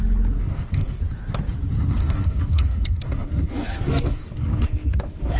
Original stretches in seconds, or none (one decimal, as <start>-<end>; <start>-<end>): 0.0-0.4; 1.0-2.0